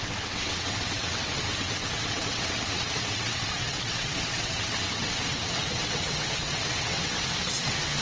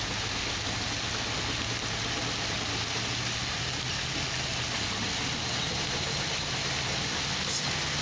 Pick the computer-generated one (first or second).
first